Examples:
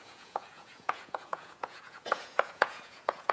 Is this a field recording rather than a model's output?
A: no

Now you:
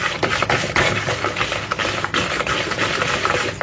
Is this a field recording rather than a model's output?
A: yes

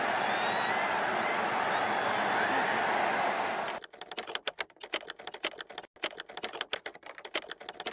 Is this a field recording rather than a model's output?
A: yes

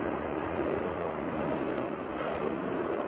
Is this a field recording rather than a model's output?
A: no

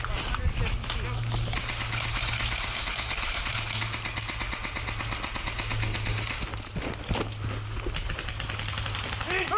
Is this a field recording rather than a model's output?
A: yes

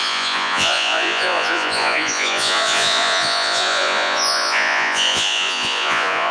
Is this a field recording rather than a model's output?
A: no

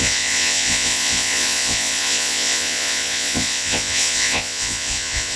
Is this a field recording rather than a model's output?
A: no